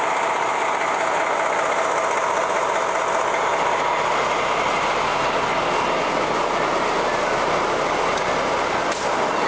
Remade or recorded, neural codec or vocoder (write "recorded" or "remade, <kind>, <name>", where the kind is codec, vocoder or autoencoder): recorded